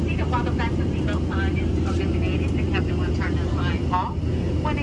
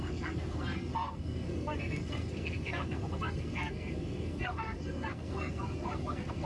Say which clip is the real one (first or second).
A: first